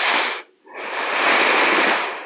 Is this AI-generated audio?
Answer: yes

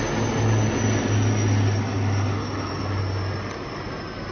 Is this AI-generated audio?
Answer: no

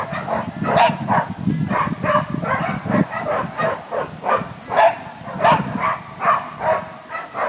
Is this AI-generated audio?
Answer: yes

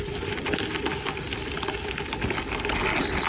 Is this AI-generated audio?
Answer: no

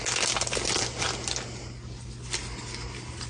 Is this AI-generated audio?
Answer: no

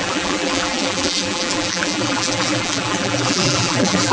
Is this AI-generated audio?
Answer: yes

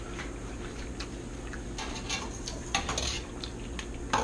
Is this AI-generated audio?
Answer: no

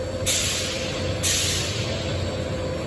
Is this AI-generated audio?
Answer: no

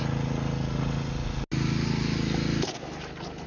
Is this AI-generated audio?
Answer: no